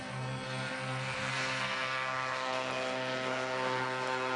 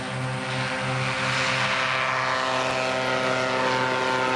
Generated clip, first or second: first